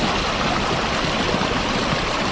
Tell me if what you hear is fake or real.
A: real